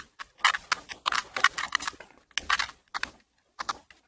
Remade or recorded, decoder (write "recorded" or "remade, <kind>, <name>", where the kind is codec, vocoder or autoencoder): recorded